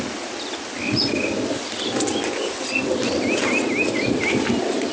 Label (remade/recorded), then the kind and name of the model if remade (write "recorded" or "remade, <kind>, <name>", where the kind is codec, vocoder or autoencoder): recorded